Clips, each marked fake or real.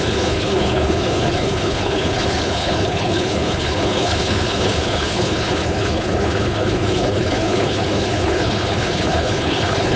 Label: fake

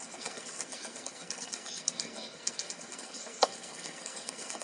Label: fake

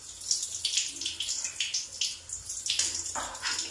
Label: real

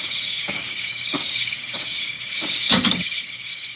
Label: fake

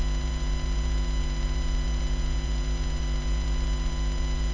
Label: fake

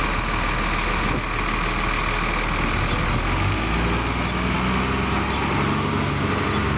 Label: real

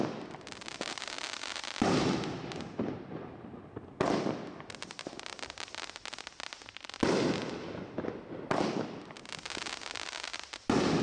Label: real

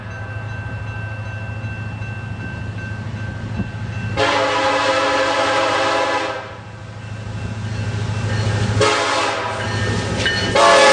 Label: real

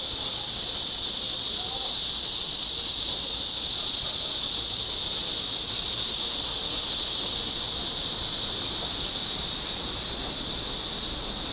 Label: real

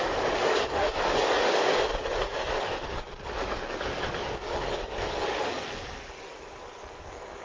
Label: fake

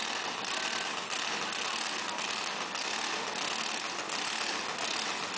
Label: real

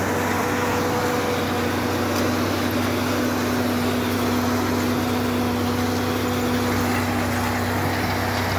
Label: real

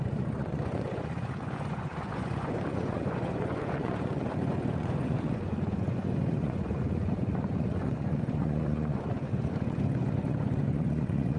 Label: fake